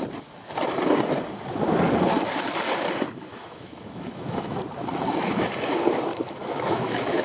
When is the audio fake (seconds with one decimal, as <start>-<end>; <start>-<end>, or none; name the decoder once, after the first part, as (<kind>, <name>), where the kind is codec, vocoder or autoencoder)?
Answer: 3.3-4.6 (autoencoder, DAC-VAE); 6.1-7.2

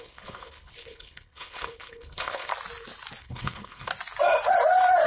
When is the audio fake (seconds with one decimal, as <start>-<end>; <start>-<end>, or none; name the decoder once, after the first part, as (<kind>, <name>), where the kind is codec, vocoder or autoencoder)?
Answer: 0.0-2.5 (codec, HILCodec); 3.2-3.9

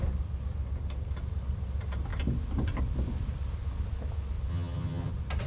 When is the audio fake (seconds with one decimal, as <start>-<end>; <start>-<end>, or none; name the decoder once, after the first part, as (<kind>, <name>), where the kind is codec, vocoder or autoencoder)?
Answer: 4.5-5.1 (vocoder, HiFi-GAN)

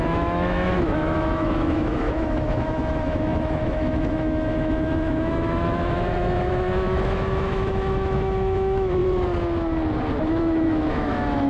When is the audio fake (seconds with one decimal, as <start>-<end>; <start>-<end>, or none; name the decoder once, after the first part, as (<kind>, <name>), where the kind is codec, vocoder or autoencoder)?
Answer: 0.0-9.0 (autoencoder, DAC-VAE); 10.2-11.5

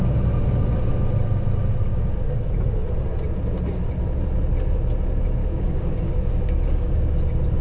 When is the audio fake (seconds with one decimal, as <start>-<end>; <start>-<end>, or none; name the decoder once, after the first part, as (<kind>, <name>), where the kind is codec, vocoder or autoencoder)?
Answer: 5.4-7.1 (codec, DAC)

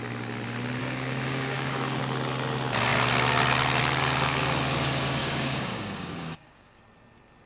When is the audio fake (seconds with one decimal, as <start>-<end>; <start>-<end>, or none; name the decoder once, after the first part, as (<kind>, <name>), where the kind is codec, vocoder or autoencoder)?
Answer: 0.8-2.0 (codec, DAC); 5.2-6.8

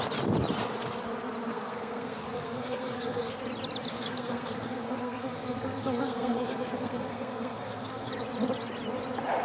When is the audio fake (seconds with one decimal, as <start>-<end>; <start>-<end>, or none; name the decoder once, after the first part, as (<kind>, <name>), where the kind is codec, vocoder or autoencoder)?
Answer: 1.5-3.4 (codec, SNAC); 3.9-8.1

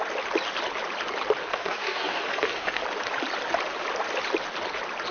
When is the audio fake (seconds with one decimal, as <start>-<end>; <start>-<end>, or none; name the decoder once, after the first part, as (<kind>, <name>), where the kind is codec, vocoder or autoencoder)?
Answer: 1.4-2.8 (codec, SNAC)